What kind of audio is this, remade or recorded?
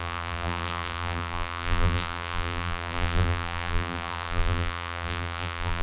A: remade